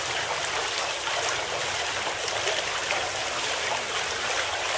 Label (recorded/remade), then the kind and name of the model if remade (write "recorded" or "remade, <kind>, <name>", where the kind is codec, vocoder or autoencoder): recorded